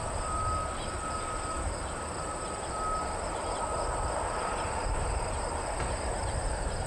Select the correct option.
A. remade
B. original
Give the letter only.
A